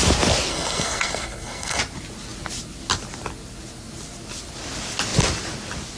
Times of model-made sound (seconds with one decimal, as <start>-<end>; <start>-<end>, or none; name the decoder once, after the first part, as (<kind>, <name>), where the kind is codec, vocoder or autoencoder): 0.5-1.8 (codec, SNAC)